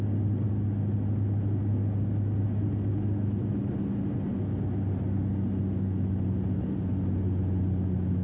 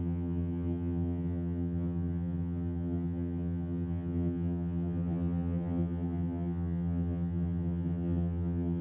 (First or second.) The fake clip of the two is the second